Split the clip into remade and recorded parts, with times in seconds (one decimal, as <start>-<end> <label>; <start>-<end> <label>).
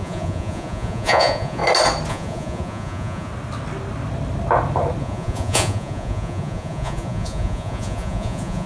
0.0-1.6 remade; 1.6-2.1 recorded; 2.1-3.3 remade; 3.3-5.0 recorded; 5.0-8.7 remade